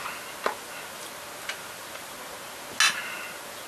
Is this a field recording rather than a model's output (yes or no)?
yes